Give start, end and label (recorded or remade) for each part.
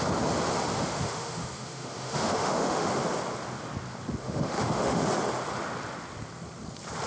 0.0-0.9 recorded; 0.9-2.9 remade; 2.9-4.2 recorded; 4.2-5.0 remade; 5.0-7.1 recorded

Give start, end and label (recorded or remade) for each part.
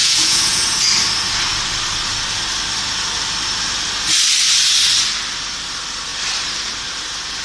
0.0-0.9 remade; 0.9-7.4 recorded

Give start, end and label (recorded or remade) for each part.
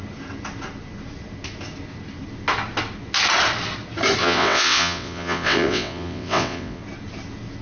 0.0-4.2 recorded; 4.2-6.8 remade; 6.8-7.6 recorded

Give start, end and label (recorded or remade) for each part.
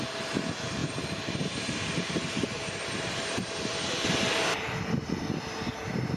0.0-0.8 recorded; 0.8-3.9 remade; 3.9-6.2 recorded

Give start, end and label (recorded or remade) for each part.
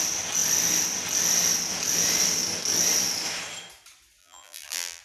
0.0-4.2 recorded; 4.2-5.0 remade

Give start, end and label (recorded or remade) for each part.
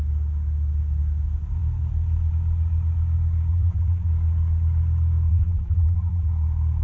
0.0-3.5 recorded; 3.5-4.1 remade; 4.1-5.3 recorded; 5.3-6.3 remade; 6.3-6.8 recorded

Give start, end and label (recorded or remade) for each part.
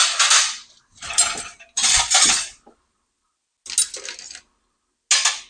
0.0-3.3 remade; 3.3-5.5 recorded